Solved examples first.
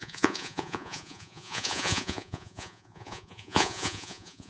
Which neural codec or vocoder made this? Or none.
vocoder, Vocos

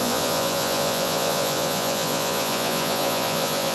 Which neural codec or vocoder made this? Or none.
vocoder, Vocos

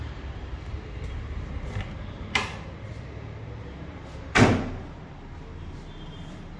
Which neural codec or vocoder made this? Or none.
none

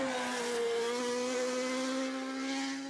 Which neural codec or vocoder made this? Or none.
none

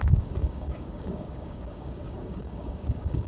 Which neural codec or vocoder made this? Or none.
codec, DAC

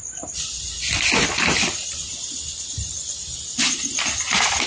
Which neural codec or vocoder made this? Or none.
none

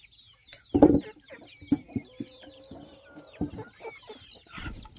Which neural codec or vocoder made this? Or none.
none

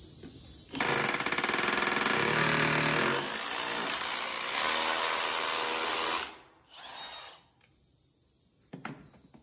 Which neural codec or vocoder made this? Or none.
none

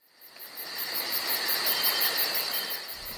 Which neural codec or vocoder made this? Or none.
none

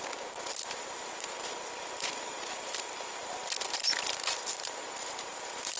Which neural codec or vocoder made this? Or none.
vocoder, BigVGAN v2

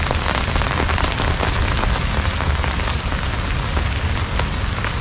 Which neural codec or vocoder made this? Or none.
none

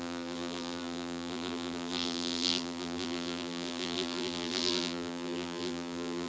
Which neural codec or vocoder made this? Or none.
vocoder, BigVGAN v2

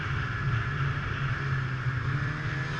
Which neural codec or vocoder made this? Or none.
none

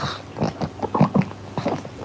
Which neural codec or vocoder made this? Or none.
none